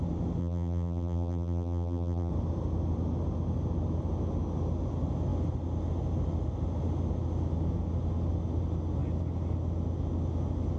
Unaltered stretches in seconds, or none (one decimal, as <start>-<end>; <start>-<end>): 0.0-0.4; 2.3-10.8